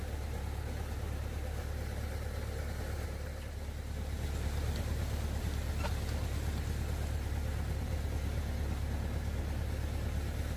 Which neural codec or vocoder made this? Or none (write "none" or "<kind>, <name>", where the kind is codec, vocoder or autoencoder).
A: none